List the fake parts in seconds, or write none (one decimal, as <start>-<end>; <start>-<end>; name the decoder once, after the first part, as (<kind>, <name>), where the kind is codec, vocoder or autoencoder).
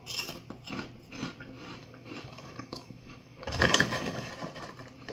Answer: 1.8-4.3 (codec, DAC)